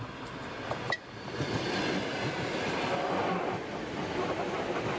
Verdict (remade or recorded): recorded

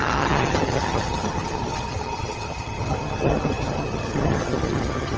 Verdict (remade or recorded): remade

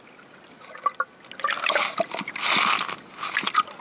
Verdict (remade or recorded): recorded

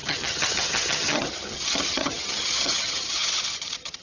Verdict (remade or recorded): remade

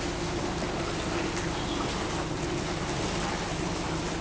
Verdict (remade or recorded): recorded